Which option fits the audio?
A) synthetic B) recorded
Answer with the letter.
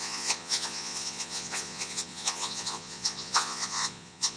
A